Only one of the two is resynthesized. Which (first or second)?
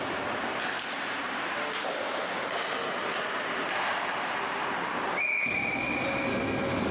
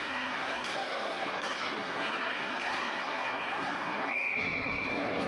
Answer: second